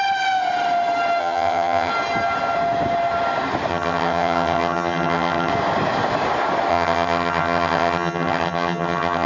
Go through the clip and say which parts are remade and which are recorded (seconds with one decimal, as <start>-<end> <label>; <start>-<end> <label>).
0.0-1.2 recorded; 1.2-1.9 remade; 1.9-3.7 recorded; 3.7-5.5 remade; 5.5-6.7 recorded; 6.7-9.3 remade